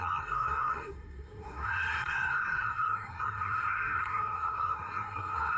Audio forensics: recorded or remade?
remade